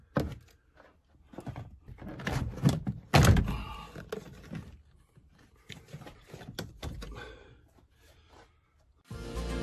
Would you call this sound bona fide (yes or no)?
yes